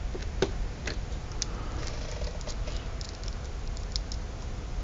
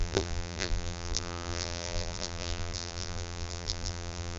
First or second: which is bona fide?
first